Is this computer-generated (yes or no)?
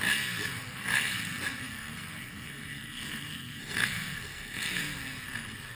yes